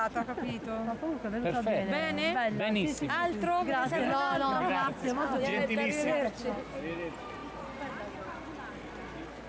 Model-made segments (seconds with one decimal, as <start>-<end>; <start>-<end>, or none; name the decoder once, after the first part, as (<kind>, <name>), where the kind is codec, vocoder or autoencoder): none